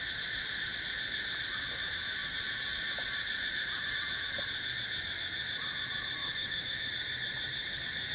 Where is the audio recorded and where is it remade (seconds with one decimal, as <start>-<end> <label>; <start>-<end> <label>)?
0.0-6.2 recorded; 6.2-6.9 remade; 6.9-8.1 recorded